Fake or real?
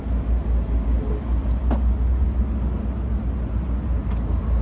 real